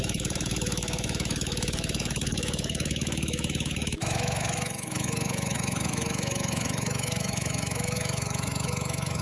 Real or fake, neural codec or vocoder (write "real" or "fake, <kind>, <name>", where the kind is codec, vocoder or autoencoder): fake, autoencoder, DAC-VAE